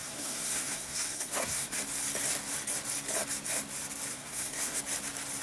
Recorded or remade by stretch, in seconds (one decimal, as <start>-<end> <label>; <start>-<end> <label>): 0.0-1.8 remade; 1.8-4.1 recorded; 4.1-4.8 remade; 4.8-5.4 recorded